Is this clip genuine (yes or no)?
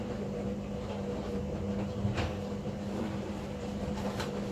yes